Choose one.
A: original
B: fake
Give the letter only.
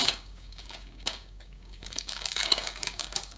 B